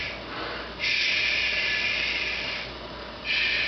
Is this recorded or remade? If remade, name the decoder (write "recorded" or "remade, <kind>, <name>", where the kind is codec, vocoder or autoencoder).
recorded